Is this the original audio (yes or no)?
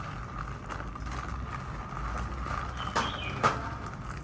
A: yes